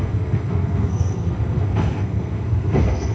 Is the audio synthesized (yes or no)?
yes